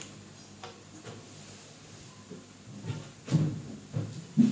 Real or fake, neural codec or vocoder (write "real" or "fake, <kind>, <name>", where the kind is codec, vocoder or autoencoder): real